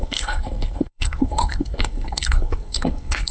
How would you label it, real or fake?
fake